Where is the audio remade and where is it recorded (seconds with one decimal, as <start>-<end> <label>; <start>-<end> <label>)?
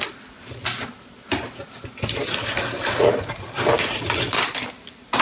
0.0-5.2 recorded